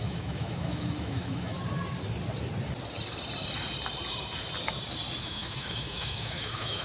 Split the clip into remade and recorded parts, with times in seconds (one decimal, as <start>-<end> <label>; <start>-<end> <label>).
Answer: 0.0-1.5 remade; 1.5-5.2 recorded; 5.2-6.8 remade